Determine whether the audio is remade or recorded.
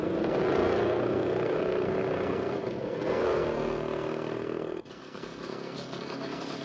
remade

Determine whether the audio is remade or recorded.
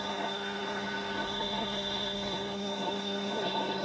remade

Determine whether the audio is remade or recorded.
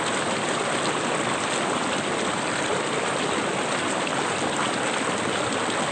recorded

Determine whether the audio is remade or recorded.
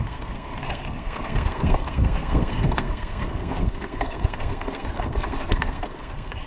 remade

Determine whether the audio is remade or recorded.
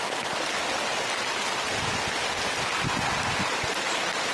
recorded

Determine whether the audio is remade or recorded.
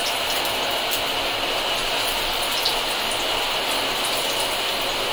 recorded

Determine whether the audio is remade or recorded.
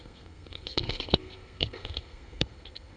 remade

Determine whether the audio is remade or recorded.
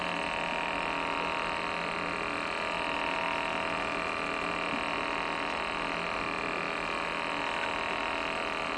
recorded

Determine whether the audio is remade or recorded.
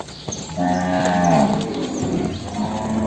recorded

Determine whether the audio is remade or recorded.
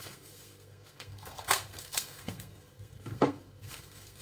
remade